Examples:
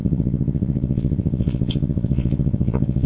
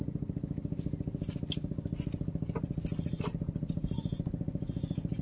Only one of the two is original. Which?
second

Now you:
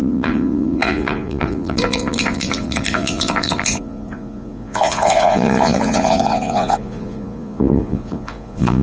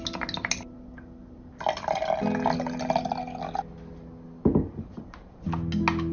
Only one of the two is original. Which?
second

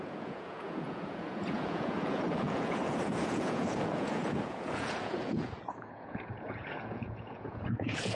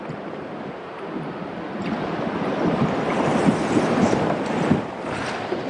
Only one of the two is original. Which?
second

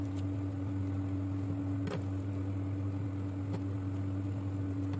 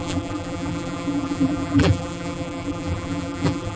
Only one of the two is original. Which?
first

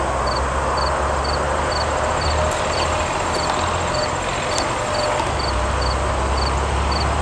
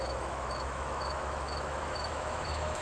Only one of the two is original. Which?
first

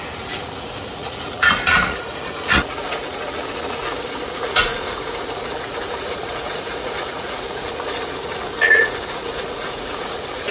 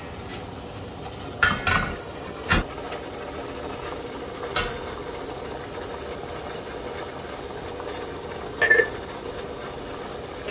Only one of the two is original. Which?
second